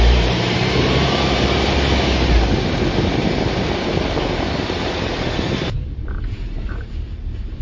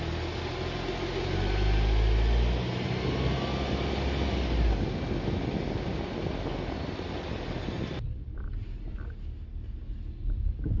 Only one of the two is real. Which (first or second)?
second